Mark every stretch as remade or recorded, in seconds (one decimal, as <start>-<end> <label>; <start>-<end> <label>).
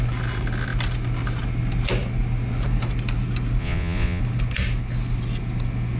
0.0-3.6 recorded; 3.6-4.2 remade; 4.2-6.0 recorded